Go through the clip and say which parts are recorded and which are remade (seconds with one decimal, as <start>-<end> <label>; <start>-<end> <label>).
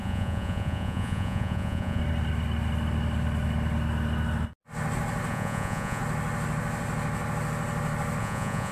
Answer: 0.0-2.0 remade; 2.0-5.3 recorded; 5.3-6.0 remade; 6.0-8.2 recorded; 8.2-8.7 remade